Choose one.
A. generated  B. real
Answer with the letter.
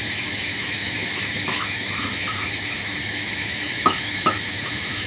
A